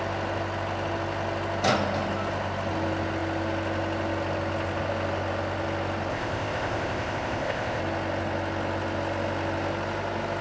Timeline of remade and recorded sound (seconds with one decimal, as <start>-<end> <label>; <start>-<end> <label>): 0.0-6.1 recorded; 6.1-7.8 remade; 7.8-10.4 recorded